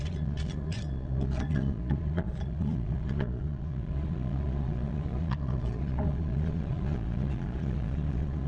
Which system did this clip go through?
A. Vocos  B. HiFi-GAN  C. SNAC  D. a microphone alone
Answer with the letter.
A